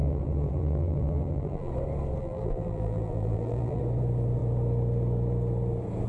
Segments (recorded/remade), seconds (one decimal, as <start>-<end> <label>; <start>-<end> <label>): 0.0-1.7 remade; 1.7-2.2 recorded; 2.2-3.8 remade; 3.8-6.1 recorded